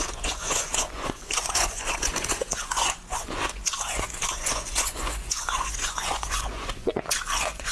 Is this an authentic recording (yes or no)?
no